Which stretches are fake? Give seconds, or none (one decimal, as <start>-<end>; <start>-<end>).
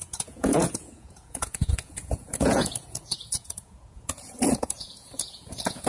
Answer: 0.0-5.9